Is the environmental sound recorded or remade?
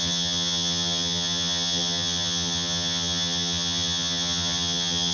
remade